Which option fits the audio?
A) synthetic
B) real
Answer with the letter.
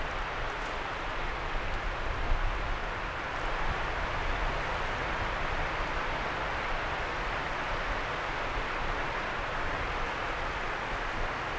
B